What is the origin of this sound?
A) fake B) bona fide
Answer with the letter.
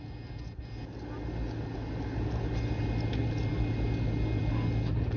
B